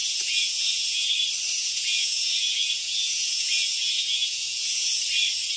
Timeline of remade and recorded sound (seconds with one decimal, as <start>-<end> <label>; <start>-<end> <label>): 0.0-1.1 remade; 1.1-1.6 recorded; 1.6-5.0 remade; 5.0-5.6 recorded

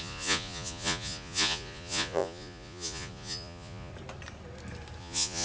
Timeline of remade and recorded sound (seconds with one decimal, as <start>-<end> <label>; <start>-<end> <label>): 0.0-3.9 remade; 3.9-5.0 recorded; 5.0-5.4 remade

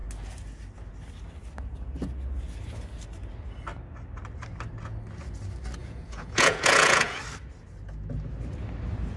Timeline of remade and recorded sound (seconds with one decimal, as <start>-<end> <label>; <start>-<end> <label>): 0.0-5.8 recorded; 5.8-7.2 remade; 7.2-9.2 recorded

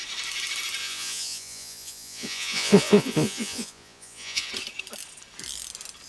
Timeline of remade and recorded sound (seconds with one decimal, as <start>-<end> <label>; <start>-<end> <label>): 0.0-0.8 recorded; 0.8-4.5 remade; 4.5-6.1 recorded

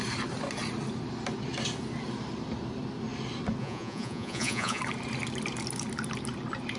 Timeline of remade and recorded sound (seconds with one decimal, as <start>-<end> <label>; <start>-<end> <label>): 0.0-3.6 recorded; 3.6-4.8 remade; 4.8-6.8 recorded